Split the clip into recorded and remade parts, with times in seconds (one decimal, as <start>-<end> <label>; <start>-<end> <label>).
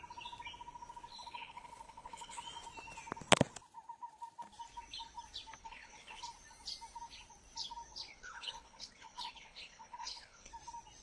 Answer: 0.0-1.1 recorded; 1.1-2.4 remade; 2.4-5.6 recorded; 5.6-6.2 remade; 6.2-8.1 recorded; 8.1-10.5 remade; 10.5-11.0 recorded